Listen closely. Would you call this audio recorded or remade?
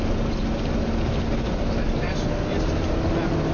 recorded